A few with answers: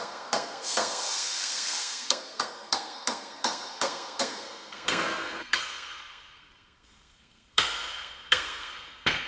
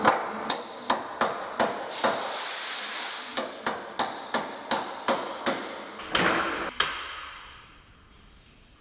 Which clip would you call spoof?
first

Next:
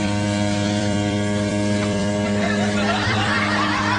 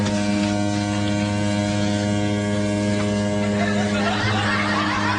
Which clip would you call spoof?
first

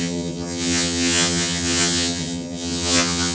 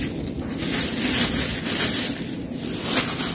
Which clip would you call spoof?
first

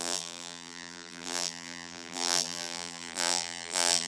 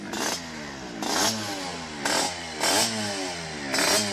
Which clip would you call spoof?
first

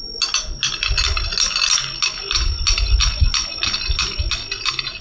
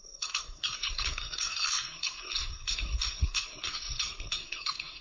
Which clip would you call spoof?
second